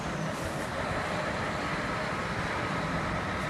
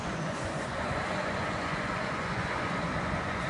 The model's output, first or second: second